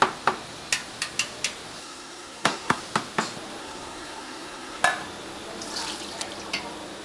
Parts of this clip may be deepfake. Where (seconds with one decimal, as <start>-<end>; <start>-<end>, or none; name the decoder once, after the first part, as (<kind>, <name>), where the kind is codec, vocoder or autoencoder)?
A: 1.8-2.8 (codec, SNAC); 3.6-4.8